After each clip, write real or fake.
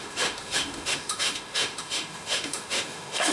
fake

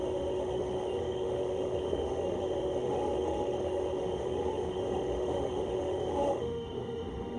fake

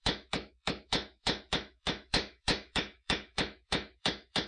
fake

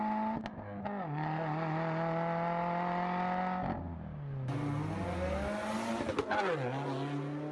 real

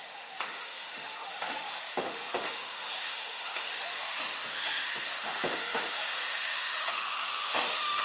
fake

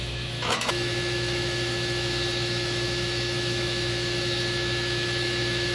fake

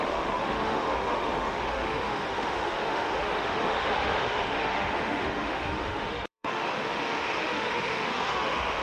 fake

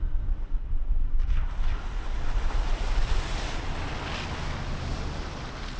real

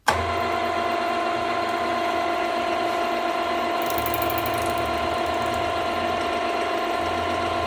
real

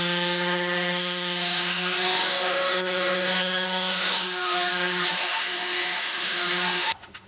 fake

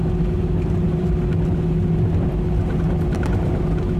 real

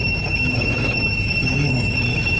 fake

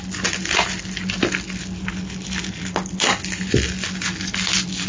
real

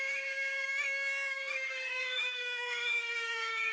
fake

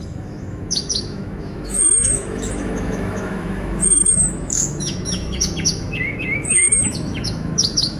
fake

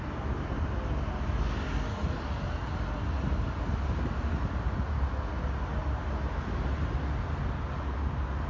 real